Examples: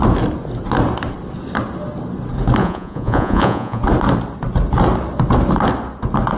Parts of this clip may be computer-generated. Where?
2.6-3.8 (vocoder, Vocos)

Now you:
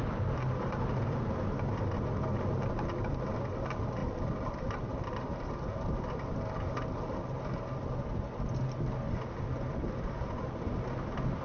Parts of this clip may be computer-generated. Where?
none

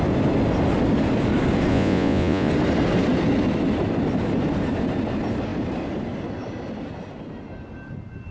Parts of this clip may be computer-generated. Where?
1.7-2.5 (vocoder, Vocos)

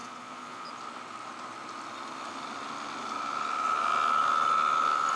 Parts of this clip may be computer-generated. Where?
0.0-0.7 (vocoder, Vocos)

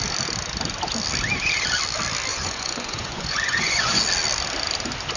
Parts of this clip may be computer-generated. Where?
2.3-4.0 (vocoder, Vocos)